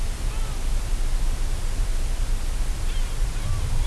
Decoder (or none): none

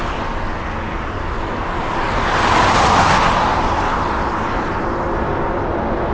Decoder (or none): none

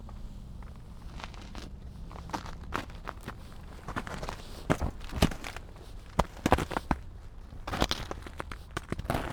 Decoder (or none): none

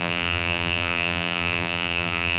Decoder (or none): vocoder, BigVGAN v2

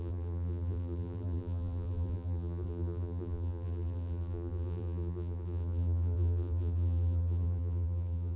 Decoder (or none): vocoder, BigVGAN v2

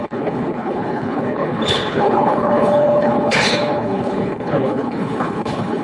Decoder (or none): codec, HILCodec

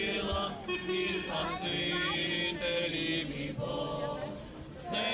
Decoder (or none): none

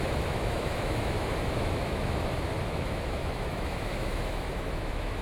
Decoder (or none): autoencoder, DAC-VAE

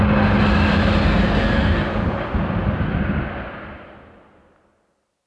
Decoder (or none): none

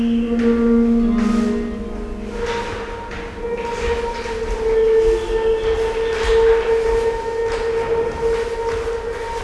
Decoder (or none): none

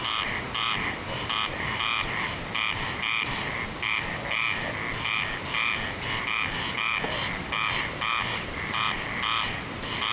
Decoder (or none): none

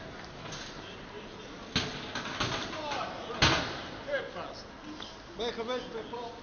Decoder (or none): none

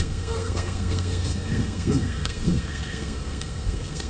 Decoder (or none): codec, SNAC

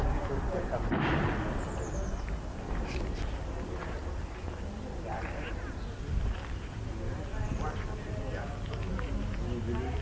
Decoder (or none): none